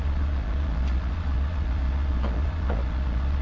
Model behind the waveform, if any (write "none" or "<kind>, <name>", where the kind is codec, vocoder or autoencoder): vocoder, Vocos